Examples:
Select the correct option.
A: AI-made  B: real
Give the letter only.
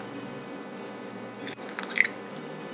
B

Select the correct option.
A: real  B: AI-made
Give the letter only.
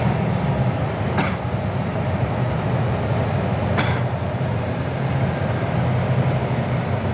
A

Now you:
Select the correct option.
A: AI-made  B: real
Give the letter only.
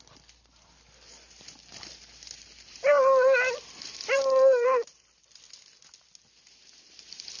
B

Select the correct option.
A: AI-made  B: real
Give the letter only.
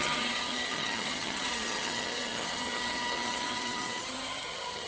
A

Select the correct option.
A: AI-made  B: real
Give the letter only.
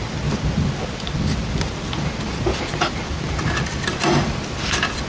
B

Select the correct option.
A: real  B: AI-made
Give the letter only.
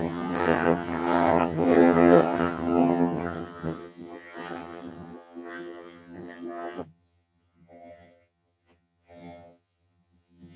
B